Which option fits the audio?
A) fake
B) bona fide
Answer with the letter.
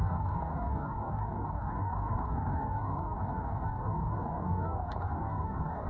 A